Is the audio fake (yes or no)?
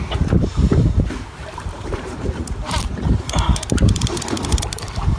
yes